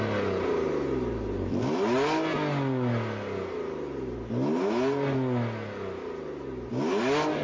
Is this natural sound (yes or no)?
yes